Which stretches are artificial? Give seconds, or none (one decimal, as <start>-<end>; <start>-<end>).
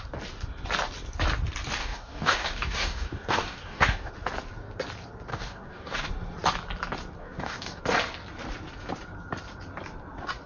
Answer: 1.8-4.1; 5.3-6.1; 7.2-7.8